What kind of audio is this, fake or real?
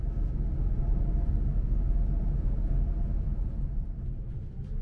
real